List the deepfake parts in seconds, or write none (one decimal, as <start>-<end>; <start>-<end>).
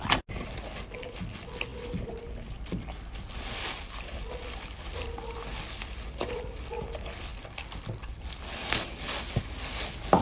1.7-5.2